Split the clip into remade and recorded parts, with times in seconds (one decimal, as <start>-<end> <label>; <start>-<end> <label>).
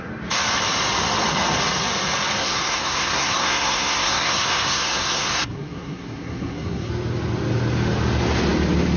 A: 0.0-2.4 recorded; 2.4-6.9 remade; 6.9-9.0 recorded